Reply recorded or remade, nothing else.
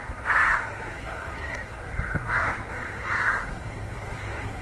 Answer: remade